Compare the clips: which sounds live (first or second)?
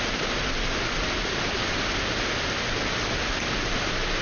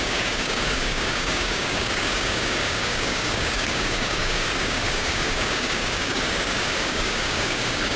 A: first